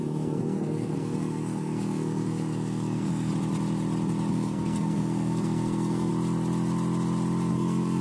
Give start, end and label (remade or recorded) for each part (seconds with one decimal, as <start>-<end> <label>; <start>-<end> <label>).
0.0-3.3 remade; 3.3-4.3 recorded; 4.3-6.1 remade; 6.1-7.5 recorded; 7.5-8.0 remade